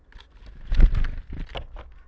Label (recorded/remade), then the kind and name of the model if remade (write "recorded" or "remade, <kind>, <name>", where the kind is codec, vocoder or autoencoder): recorded